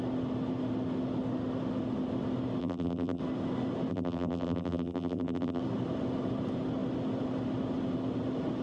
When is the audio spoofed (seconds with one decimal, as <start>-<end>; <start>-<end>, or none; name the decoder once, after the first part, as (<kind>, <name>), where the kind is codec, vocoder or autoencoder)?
2.6-3.2 (vocoder, BigVGAN v2); 3.9-5.6